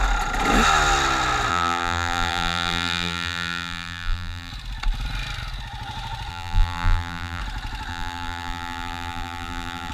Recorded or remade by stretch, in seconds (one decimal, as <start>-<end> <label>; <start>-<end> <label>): 0.0-1.5 recorded; 1.5-4.5 remade; 4.5-6.3 recorded; 6.3-7.4 remade; 7.4-7.9 recorded; 7.9-9.9 remade